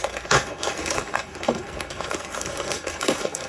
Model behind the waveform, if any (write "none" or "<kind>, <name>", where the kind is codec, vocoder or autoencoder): codec, SNAC